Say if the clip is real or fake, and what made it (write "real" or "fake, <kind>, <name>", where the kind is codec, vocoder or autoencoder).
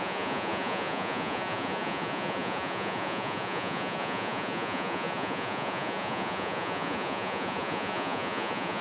fake, vocoder, Vocos